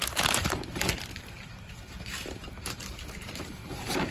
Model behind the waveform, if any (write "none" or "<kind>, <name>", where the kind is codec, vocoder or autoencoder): vocoder, BigVGAN v2